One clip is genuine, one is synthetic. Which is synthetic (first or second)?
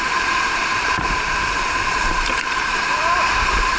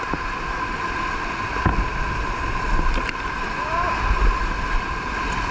first